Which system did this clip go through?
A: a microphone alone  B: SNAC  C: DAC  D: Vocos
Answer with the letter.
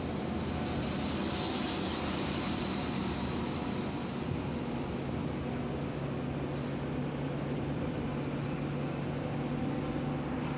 A